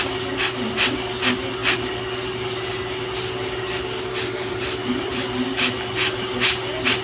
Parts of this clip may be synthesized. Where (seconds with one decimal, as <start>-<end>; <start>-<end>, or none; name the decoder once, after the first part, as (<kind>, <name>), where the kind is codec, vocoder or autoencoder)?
none